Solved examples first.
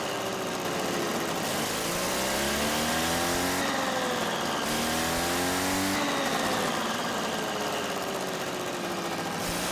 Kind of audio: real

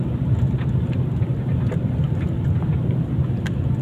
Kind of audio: real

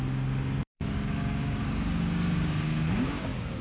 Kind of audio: fake